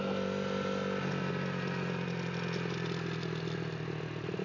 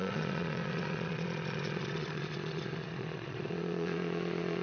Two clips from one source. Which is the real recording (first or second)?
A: first